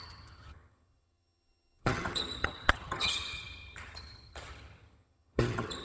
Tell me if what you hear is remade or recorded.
remade